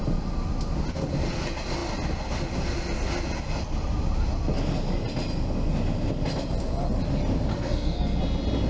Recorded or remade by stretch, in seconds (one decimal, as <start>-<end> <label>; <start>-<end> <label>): 0.0-7.5 recorded; 7.5-8.2 remade; 8.2-8.7 recorded